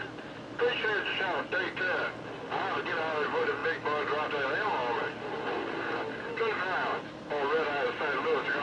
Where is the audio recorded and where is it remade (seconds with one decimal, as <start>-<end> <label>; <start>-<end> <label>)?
0.0-8.6 recorded